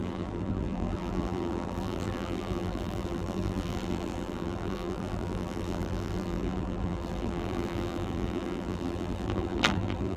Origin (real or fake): fake